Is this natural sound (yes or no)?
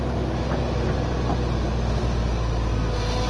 yes